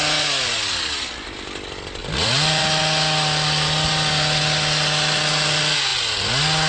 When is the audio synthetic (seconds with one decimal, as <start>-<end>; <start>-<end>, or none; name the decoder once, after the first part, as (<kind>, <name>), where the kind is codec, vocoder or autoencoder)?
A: 2.0-2.6 (vocoder, BigVGAN v2)